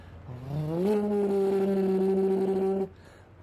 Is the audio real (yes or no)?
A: yes